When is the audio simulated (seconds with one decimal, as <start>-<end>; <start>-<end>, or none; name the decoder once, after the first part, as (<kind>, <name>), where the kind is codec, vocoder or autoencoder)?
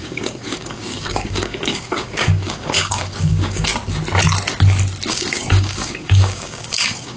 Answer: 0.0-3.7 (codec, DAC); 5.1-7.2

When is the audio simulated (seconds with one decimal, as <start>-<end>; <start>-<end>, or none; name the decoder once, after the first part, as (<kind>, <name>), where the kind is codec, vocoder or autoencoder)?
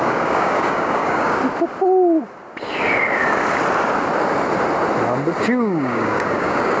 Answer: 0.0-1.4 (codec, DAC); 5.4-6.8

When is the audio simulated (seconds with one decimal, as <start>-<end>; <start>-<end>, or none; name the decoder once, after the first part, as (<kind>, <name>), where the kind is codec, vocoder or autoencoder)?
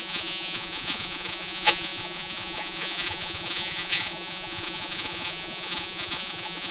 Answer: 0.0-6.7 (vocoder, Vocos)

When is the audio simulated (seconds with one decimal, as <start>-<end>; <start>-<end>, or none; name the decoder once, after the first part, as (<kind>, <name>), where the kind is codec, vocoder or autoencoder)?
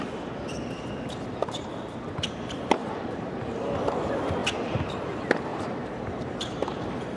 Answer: 2.8-3.4 (vocoder, BigVGAN v2); 4.4-5.0; 5.5-6.7